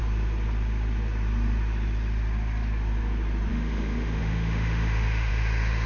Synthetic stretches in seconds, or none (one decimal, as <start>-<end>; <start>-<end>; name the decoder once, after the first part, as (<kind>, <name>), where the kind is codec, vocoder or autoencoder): 3.5-5.9 (autoencoder, DAC-VAE)